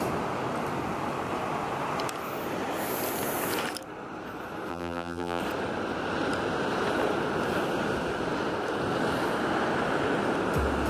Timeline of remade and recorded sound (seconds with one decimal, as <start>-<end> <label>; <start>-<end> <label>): 0.0-4.7 recorded; 4.7-5.4 remade; 5.4-10.9 recorded